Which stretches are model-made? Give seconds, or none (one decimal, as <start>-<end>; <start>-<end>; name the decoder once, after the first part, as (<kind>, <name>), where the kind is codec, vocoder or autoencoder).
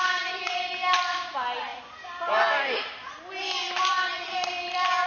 none